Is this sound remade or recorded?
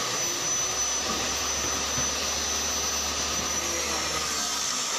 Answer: recorded